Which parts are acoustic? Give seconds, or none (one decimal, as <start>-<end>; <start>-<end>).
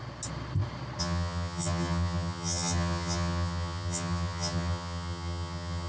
0.0-1.0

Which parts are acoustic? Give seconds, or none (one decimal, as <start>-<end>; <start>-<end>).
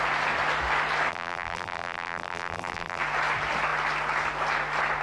0.0-1.1; 3.0-5.0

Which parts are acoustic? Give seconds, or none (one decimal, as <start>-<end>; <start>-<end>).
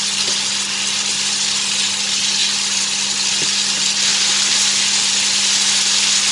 0.0-6.3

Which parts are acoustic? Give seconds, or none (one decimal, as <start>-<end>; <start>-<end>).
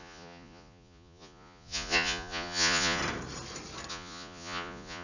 3.0-3.9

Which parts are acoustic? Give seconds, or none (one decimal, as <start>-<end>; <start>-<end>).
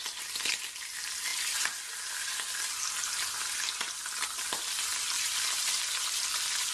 0.0-6.7